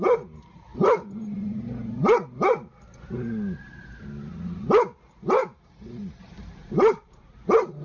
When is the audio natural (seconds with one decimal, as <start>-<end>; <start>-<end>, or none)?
0.0-7.8